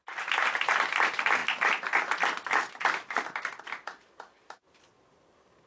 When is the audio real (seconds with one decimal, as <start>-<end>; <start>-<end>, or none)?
1.4-3.6